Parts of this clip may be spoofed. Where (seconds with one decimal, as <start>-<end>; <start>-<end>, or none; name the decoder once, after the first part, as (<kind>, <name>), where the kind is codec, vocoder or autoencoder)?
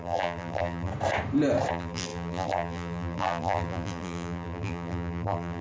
0.0-0.9 (vocoder, BigVGAN v2); 1.7-5.6